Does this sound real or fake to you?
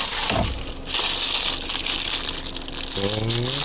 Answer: real